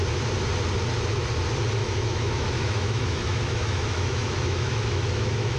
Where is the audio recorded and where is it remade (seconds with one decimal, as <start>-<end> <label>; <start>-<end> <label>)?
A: 0.0-1.8 recorded; 1.8-5.6 remade